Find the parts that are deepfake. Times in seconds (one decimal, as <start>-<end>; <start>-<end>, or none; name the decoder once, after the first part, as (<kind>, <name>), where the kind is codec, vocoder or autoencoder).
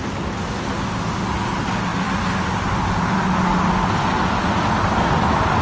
none